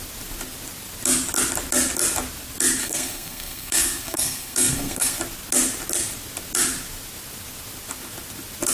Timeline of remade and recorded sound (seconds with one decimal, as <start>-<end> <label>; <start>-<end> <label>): 0.0-2.8 recorded; 2.8-5.2 remade; 5.2-8.7 recorded